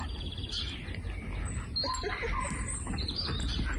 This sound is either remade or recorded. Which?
recorded